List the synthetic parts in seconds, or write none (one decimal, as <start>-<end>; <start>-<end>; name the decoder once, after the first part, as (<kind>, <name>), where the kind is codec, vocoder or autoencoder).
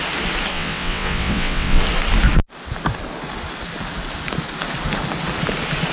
0.5-1.8 (vocoder, WaveNeXt)